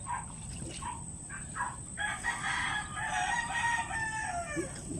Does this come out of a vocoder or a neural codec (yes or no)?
no